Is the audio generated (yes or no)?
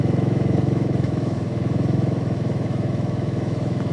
yes